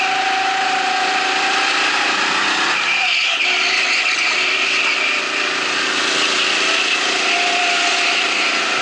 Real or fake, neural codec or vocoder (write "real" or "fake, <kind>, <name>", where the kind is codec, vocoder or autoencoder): real